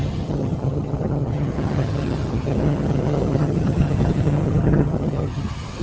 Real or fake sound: fake